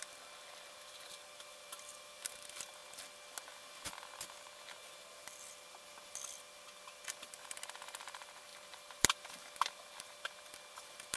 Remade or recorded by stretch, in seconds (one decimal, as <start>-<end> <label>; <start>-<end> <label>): 0.0-2.8 remade; 2.8-5.3 recorded; 5.3-11.2 remade